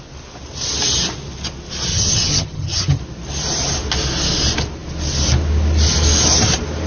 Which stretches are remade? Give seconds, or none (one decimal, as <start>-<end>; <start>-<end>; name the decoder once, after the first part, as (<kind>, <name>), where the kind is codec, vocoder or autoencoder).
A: 1.9-3.0 (vocoder, HiFi-GAN)